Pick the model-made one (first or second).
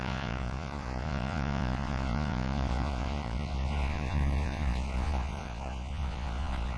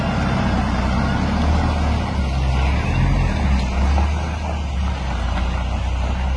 first